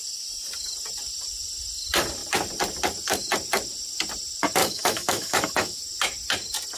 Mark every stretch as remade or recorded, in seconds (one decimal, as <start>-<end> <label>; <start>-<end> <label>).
0.0-4.6 recorded; 4.6-5.8 remade; 5.8-6.8 recorded